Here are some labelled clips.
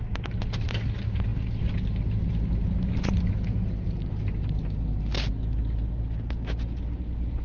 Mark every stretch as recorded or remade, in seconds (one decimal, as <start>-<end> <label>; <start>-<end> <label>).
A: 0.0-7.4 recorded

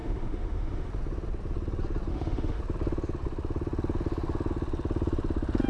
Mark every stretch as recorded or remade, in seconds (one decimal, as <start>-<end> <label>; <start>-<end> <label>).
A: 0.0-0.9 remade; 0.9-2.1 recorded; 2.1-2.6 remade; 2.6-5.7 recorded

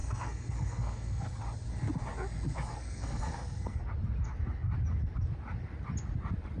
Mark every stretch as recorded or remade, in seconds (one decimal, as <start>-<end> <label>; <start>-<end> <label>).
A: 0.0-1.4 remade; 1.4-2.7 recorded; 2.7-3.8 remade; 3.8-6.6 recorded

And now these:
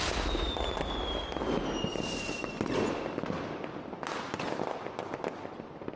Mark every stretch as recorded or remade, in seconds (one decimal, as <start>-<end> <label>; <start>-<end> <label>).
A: 0.0-6.0 recorded

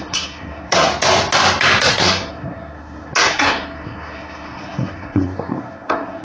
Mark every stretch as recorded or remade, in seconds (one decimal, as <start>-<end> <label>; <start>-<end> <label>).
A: 0.0-0.9 remade; 0.9-1.9 recorded; 1.9-6.2 remade

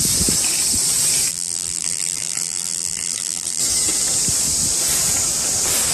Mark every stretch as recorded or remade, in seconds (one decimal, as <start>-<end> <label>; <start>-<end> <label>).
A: 0.0-1.3 recorded; 1.3-3.6 remade; 3.6-5.9 recorded

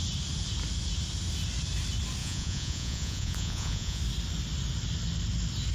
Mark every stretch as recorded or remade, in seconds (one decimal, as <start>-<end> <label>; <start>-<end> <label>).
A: 0.0-2.2 recorded; 2.2-4.0 remade; 4.0-5.7 recorded